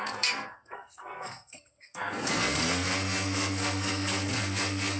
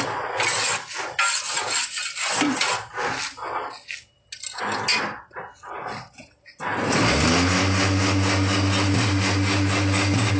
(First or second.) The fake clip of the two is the first